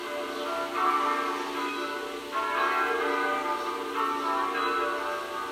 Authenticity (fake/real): real